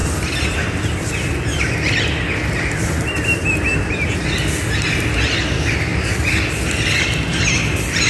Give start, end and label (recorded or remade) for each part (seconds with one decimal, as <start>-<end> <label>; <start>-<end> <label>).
0.0-8.1 recorded